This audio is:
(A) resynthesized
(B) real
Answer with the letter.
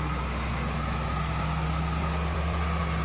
B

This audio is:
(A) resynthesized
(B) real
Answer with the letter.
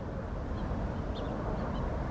A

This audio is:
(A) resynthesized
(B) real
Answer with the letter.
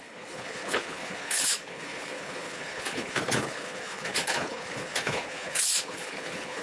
A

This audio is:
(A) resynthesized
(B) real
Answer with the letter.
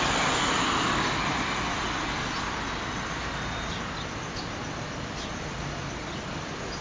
B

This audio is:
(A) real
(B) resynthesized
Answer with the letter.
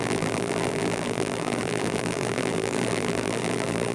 B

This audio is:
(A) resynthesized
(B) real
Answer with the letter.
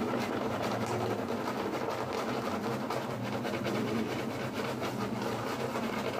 B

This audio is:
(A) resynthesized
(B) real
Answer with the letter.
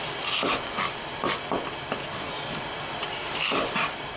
B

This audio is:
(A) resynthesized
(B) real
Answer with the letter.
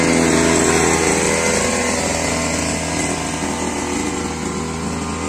B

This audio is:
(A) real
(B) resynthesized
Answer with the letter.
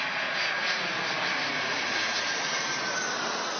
A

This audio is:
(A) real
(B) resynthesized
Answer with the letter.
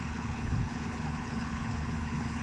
B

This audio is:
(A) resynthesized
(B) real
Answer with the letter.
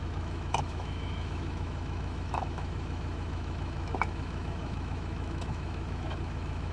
A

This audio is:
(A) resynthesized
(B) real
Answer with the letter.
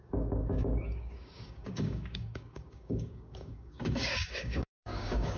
A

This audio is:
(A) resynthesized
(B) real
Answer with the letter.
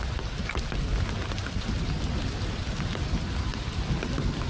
B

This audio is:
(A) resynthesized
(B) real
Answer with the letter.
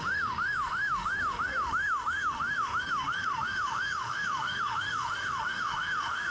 A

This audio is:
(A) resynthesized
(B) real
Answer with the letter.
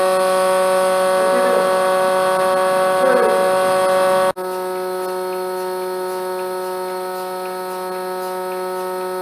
B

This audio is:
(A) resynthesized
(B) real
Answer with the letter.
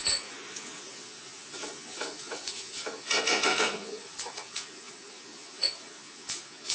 A